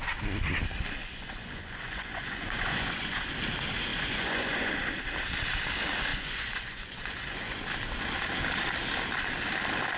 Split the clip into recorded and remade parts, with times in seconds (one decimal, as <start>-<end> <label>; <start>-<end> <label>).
0.0-1.0 recorded; 1.0-3.3 remade; 3.3-3.9 recorded; 3.9-4.7 remade; 4.7-6.1 recorded; 6.1-7.6 remade; 7.6-10.0 recorded